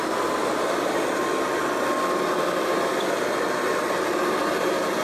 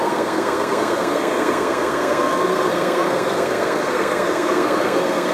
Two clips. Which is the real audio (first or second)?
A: first